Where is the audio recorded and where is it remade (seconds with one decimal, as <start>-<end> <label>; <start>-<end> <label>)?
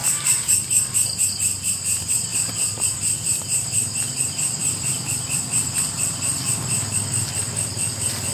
0.0-0.5 remade; 0.5-8.3 recorded